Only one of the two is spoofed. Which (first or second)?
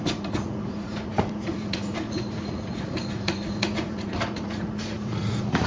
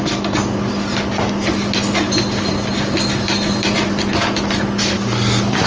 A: first